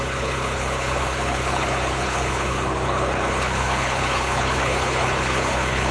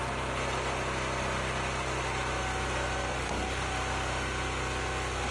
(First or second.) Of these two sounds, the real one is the second